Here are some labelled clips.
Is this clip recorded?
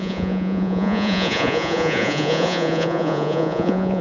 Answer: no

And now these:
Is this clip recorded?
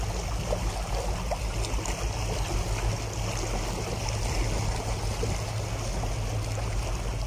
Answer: yes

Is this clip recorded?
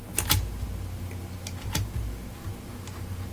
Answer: yes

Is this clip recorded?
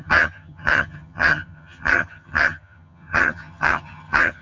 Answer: no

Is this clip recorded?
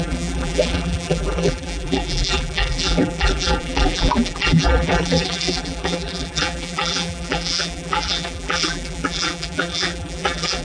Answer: no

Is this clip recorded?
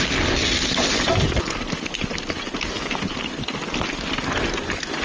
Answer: yes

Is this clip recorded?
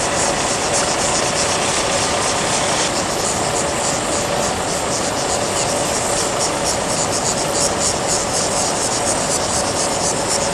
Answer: yes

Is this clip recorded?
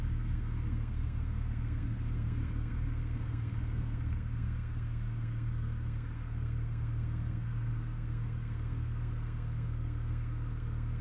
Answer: no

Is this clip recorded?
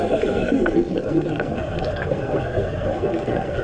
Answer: no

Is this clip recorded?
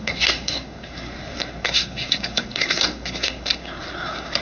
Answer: no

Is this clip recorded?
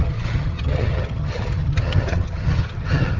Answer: no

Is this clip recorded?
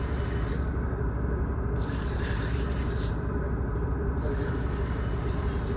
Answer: no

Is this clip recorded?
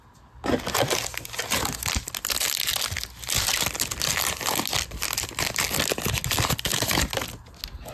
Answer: yes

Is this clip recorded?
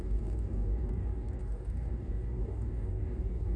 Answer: no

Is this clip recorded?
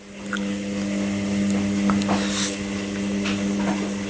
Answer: yes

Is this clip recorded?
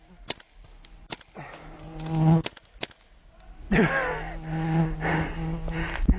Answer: yes